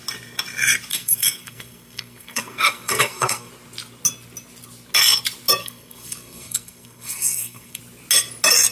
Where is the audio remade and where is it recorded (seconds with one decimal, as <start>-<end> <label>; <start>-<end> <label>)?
0.0-0.9 recorded; 0.9-3.5 remade; 3.5-5.6 recorded; 5.6-7.8 remade; 7.8-8.7 recorded

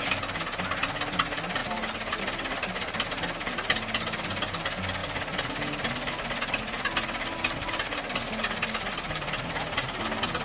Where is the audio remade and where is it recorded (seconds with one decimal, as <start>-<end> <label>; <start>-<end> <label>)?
0.0-10.4 recorded

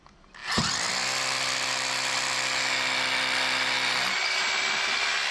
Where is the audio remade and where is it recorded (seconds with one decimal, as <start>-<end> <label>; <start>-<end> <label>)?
0.0-5.3 recorded

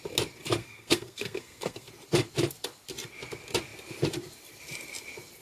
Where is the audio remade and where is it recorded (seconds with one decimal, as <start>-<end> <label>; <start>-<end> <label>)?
0.0-0.6 recorded; 0.6-1.9 remade; 1.9-5.4 recorded